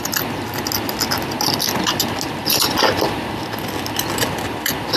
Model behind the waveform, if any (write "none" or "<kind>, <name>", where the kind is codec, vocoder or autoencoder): none